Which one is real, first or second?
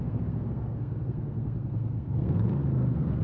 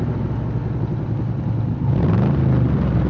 second